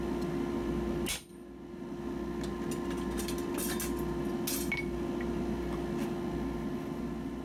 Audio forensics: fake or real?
real